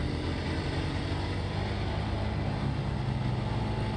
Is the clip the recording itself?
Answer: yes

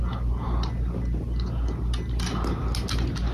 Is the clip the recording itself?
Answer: yes